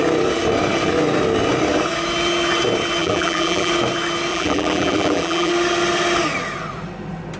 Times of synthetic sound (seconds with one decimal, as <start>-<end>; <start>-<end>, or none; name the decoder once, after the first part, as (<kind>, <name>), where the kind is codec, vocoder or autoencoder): 3.0-3.7 (vocoder, BigVGAN v2); 4.3-5.5